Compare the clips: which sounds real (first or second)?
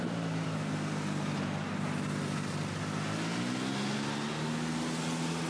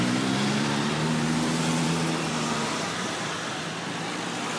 first